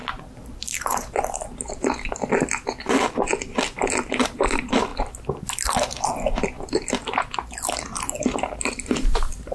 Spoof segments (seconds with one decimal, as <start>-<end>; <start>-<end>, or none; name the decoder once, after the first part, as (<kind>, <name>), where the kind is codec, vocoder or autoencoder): 4.4-4.9 (vocoder, BigVGAN v2); 8.2-9.5